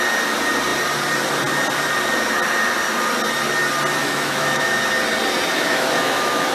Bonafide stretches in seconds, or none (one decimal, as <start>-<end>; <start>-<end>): 0.0-4.0; 4.8-5.5